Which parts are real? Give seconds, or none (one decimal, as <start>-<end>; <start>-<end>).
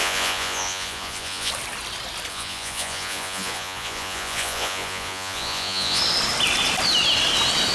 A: 1.5-2.3; 6.0-7.7